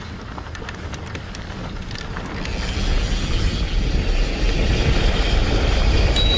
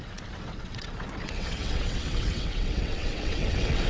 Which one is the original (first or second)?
first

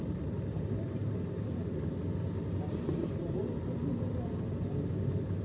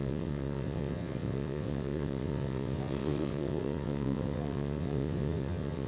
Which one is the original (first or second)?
first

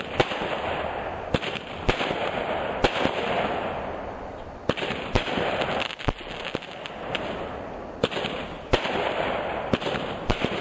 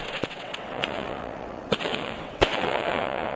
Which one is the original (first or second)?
first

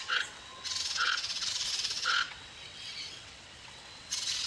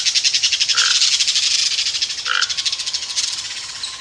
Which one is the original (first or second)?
second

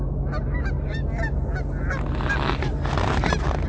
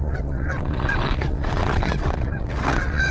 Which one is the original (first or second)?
first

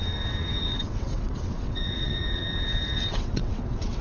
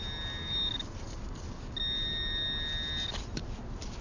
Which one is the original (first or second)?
second